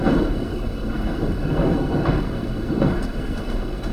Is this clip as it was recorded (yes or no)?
no